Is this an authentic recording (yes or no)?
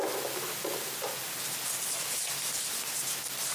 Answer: yes